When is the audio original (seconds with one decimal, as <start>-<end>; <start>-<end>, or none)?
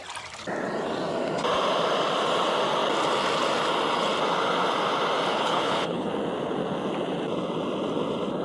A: 0.0-5.3; 6.1-8.4